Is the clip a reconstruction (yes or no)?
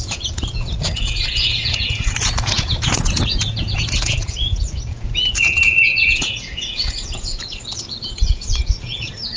yes